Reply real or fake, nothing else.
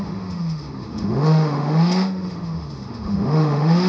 fake